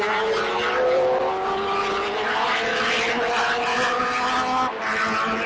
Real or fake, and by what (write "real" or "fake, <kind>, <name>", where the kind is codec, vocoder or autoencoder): real